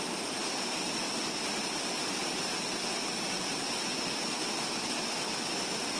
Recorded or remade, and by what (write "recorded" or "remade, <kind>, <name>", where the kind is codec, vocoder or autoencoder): recorded